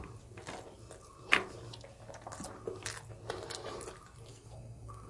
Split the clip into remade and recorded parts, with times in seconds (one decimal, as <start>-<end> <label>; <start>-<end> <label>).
0.0-4.3 recorded; 4.3-5.1 remade